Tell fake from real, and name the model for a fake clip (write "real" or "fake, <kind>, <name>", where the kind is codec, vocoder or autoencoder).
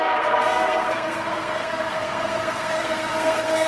fake, codec, SNAC